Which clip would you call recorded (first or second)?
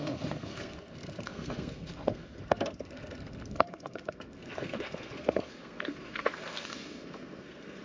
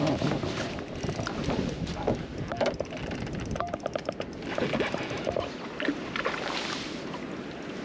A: second